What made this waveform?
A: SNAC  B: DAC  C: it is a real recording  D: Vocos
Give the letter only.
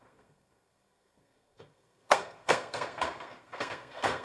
A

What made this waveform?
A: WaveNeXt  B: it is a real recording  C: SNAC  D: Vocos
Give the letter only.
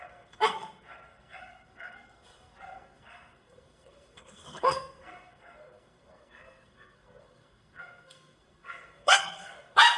C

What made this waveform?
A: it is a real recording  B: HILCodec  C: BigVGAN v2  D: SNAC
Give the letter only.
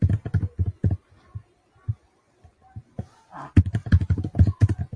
A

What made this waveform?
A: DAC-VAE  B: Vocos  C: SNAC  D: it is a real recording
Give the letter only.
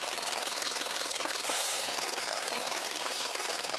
C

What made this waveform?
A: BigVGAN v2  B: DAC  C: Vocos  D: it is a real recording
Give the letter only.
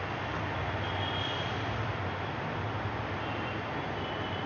D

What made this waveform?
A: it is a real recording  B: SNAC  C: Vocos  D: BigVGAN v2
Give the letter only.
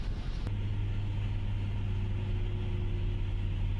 A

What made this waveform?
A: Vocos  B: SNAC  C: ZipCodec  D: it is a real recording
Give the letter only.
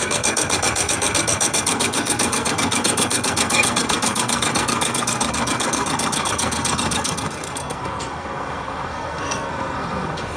B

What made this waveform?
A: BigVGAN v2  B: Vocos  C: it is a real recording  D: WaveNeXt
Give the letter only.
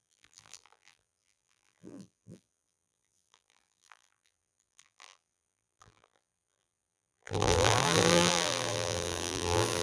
A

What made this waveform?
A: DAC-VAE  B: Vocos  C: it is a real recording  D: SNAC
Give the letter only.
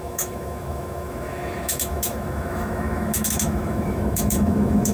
A